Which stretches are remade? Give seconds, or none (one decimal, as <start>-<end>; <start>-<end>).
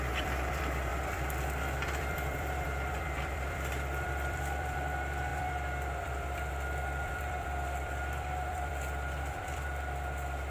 0.0-10.5